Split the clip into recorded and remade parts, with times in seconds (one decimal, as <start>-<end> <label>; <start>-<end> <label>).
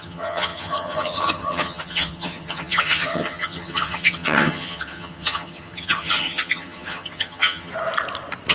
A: 0.0-7.7 remade; 7.7-8.5 recorded